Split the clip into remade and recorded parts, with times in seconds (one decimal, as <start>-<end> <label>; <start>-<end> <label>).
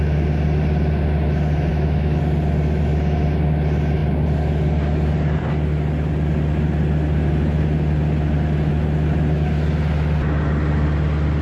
0.0-1.7 recorded; 1.7-2.2 remade; 2.2-11.4 recorded